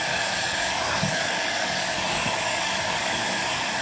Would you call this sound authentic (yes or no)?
no